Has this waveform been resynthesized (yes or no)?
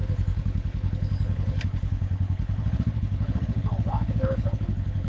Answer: yes